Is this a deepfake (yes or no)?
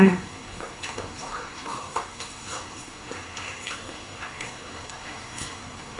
yes